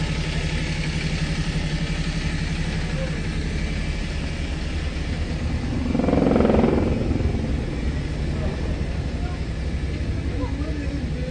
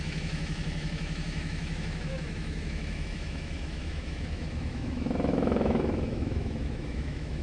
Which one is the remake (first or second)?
second